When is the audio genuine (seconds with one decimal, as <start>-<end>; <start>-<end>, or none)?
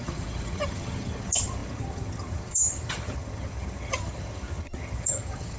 none